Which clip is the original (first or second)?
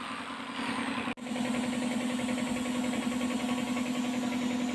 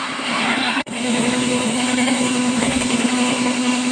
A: first